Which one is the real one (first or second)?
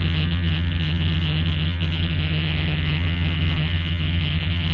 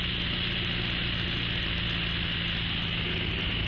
second